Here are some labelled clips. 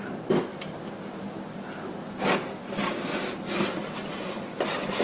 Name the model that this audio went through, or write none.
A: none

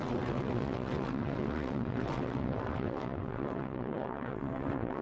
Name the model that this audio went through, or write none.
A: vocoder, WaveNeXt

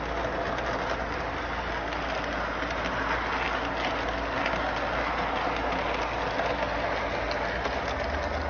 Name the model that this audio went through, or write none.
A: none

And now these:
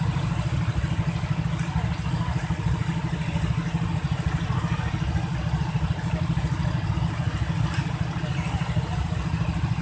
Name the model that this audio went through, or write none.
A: none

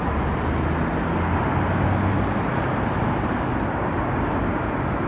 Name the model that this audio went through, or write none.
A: none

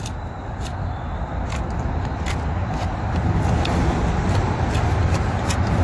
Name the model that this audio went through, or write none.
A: none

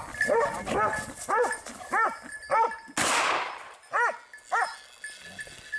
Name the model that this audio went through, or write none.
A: none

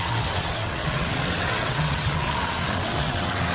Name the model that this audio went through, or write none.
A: vocoder, WaveNeXt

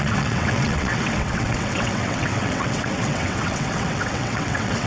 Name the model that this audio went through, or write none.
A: vocoder, WaveNeXt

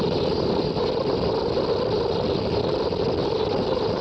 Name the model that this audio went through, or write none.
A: none